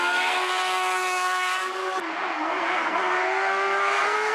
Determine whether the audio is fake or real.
fake